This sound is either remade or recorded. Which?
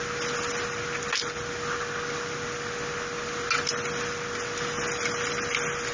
recorded